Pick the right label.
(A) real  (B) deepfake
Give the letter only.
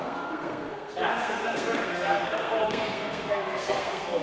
B